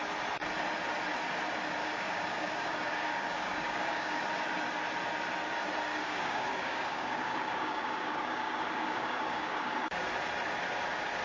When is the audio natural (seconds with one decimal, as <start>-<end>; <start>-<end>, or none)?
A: 0.0-1.8; 4.2-5.9; 9.7-11.2